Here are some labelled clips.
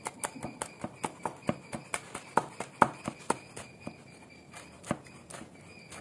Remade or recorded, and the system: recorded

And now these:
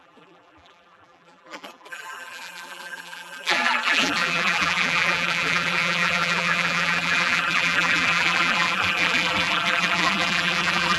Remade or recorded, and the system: remade, vocoder, BigVGAN v2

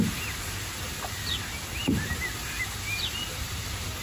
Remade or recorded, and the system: remade, vocoder, BigVGAN v2